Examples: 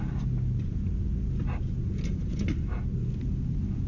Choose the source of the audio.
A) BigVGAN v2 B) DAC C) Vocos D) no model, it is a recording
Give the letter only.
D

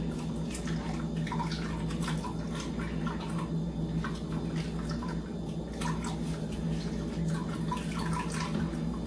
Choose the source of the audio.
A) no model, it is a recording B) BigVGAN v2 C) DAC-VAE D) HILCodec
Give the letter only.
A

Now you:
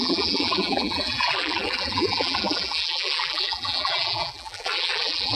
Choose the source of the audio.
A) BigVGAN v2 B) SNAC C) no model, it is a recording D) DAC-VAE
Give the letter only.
A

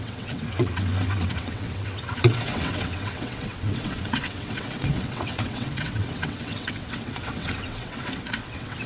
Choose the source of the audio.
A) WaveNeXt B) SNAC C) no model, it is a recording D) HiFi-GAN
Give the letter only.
A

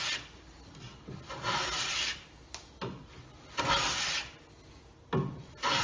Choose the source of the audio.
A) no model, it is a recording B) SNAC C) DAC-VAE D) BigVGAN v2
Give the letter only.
A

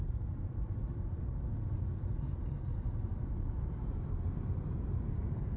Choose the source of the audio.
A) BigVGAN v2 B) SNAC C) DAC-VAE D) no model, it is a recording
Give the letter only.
D